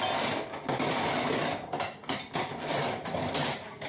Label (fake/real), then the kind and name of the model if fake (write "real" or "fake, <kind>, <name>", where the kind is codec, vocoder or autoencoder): real